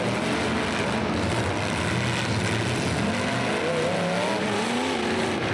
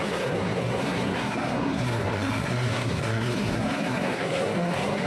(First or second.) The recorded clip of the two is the first